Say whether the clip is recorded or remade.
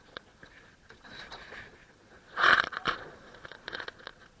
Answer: remade